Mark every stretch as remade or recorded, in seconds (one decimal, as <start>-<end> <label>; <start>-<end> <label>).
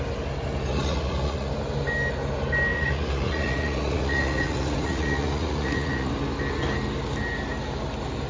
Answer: 0.0-0.7 recorded; 0.7-1.5 remade; 1.5-2.7 recorded; 2.7-6.1 remade; 6.1-8.3 recorded